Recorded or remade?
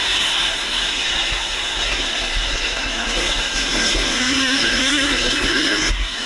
remade